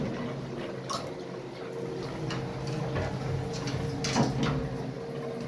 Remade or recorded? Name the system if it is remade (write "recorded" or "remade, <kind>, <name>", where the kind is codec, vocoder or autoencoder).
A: recorded